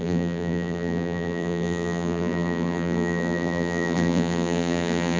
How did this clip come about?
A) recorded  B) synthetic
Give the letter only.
B